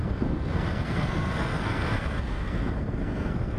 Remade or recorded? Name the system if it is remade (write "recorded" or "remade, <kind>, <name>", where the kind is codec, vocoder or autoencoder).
remade, codec, SNAC